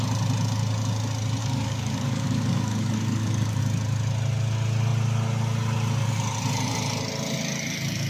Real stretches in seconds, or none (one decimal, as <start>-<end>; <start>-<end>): 0.0-1.4; 3.6-8.1

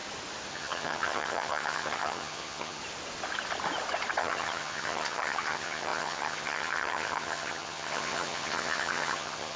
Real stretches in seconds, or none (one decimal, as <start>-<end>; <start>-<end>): 0.0-0.5; 2.8-4.2

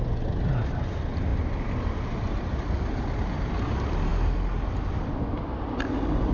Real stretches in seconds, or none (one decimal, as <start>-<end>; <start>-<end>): 0.0-6.3

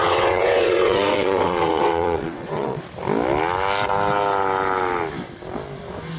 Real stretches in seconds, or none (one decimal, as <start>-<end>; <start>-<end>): 2.8-6.2

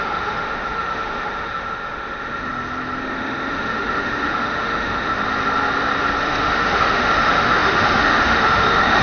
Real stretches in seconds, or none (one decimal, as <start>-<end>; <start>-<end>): 2.5-3.0; 5.1-6.2

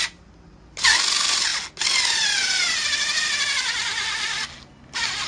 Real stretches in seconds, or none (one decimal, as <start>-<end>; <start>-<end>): 0.0-5.3

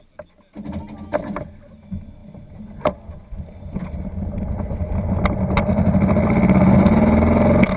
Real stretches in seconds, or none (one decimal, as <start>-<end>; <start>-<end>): 0.0-7.8

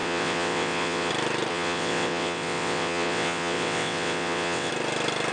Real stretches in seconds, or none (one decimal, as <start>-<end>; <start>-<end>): 1.1-1.5; 4.7-5.3